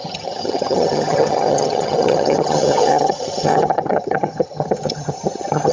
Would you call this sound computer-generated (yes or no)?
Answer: yes